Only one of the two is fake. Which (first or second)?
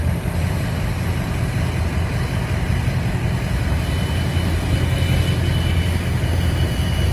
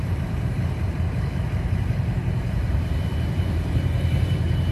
second